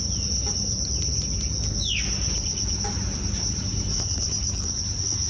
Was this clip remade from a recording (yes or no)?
no